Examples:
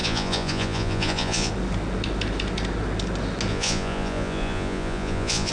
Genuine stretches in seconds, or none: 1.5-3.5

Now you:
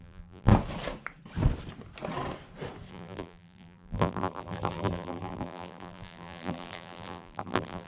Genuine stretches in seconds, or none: 0.5-2.9

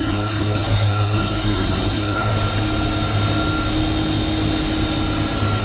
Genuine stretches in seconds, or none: 2.3-5.6

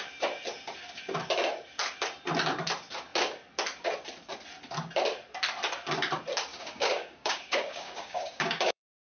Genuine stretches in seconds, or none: 0.0-6.5

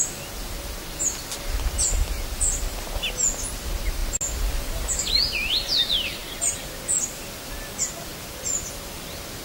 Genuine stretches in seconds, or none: 0.0-9.4

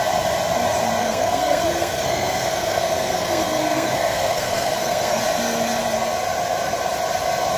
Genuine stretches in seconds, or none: 0.0-1.0; 5.2-7.6

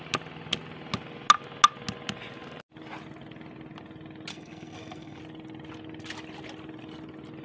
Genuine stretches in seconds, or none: 0.0-4.3; 5.2-7.4

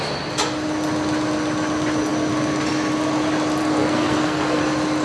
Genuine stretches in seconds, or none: 0.0-3.6; 4.6-5.0